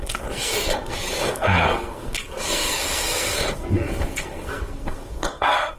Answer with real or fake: fake